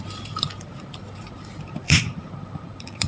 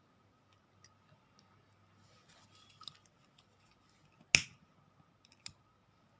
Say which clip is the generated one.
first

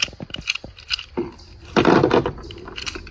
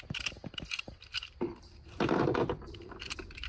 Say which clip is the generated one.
second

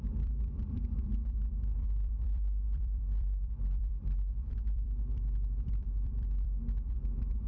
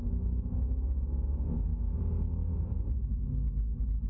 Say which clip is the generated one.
first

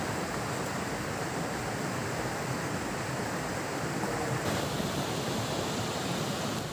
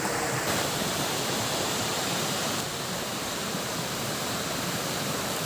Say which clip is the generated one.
second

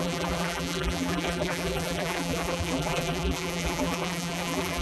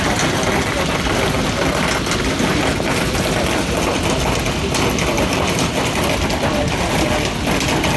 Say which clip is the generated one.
first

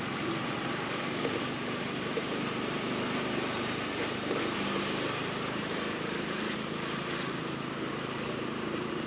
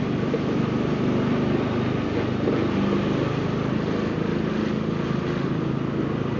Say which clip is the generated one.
first